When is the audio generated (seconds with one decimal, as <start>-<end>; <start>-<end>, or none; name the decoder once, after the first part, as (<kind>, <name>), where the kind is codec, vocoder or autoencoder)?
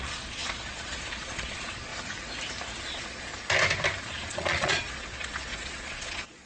0.0-1.9 (vocoder, Vocos); 2.8-3.3; 4.0-6.5